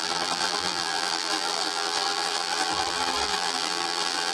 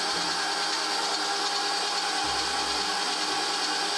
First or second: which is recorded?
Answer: second